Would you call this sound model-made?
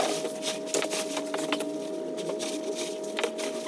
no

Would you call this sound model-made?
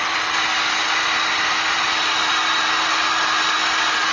yes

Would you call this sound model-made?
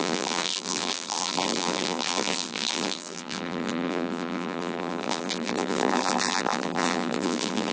yes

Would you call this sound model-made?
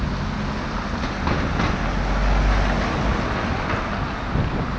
no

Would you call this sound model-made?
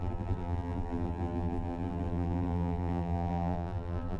yes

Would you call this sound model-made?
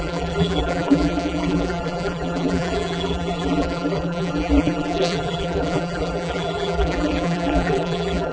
yes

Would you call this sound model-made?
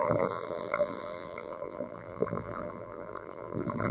yes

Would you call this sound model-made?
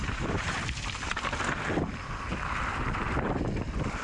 yes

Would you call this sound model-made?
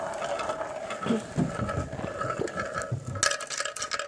no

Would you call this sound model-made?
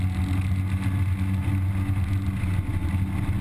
no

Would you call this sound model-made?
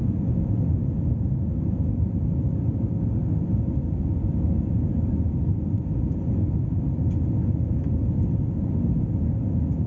no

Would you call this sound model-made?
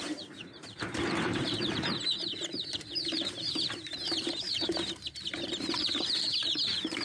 yes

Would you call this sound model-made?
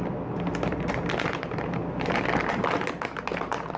no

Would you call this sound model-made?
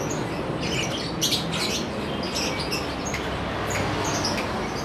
no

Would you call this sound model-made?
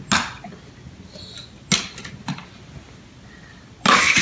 no